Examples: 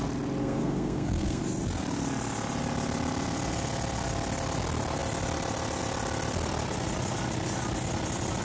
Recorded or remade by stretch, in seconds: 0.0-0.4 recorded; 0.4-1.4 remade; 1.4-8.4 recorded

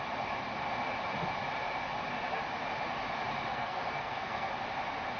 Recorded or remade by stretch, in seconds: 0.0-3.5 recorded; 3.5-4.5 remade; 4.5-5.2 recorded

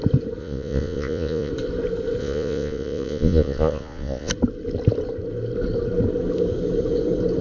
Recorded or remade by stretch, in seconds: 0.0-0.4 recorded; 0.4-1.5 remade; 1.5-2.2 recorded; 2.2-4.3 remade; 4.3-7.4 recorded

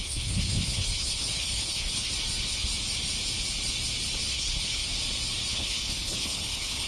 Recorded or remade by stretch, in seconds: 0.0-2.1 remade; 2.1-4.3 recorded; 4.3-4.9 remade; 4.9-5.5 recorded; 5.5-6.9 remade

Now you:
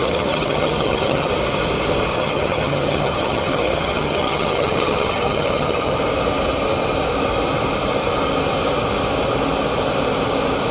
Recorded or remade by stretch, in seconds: 0.0-1.3 remade; 1.3-2.1 recorded; 2.1-6.0 remade; 6.0-10.7 recorded

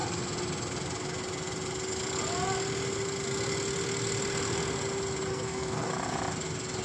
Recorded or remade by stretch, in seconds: 0.0-5.3 recorded; 5.3-5.9 remade; 5.9-6.8 recorded

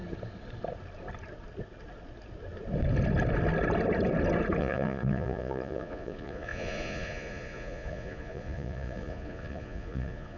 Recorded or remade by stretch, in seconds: 0.0-4.6 recorded; 4.6-10.4 remade

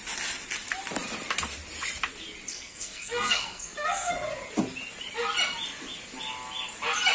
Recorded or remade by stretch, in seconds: 0.0-2.5 recorded; 2.5-4.1 remade; 4.1-7.1 recorded